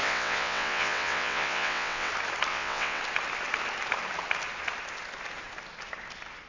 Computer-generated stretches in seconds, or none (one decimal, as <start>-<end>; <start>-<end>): 0.0-2.1; 2.5-3.0